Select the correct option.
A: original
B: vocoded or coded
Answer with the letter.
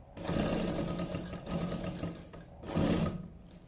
A